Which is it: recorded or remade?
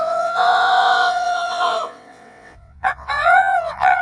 remade